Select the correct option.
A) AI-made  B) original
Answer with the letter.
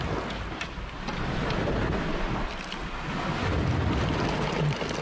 B